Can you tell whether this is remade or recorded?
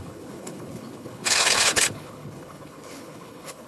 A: remade